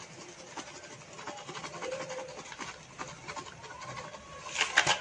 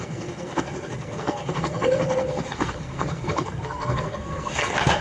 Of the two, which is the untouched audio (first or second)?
first